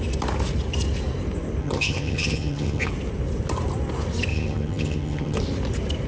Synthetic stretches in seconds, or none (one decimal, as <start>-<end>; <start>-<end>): 1.6-2.9; 4.3-5.4